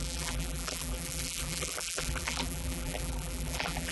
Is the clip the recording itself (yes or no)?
no